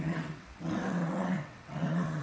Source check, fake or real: fake